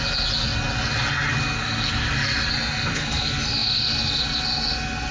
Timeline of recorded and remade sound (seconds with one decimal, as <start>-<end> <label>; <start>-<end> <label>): 0.0-5.1 recorded